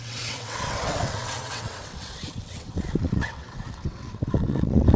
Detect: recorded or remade remade